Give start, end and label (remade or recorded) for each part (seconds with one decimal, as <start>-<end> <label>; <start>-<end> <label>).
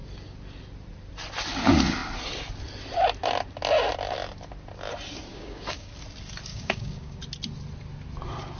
0.0-5.3 recorded; 5.3-5.9 remade; 5.9-6.5 recorded; 6.5-7.2 remade; 7.2-8.6 recorded